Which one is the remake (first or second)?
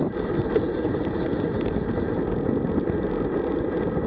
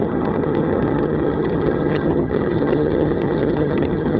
second